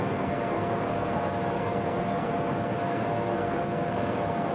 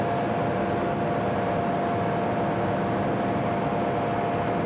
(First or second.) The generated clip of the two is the first